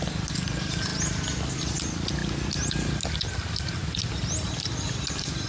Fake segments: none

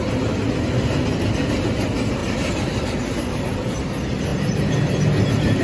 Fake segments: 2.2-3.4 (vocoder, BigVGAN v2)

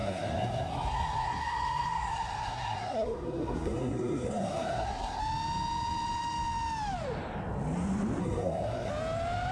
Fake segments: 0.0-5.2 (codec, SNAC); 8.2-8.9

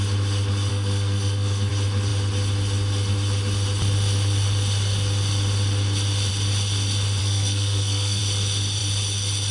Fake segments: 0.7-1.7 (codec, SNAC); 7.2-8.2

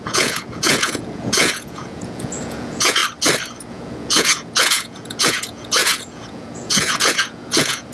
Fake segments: 0.0-3.0 (vocoder, Vocos); 3.7-7.9